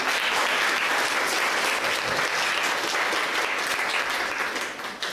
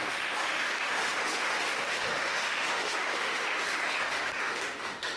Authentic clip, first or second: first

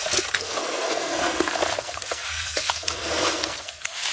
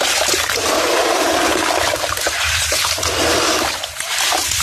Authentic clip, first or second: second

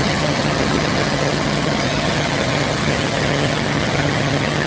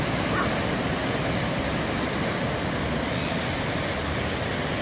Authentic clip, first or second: second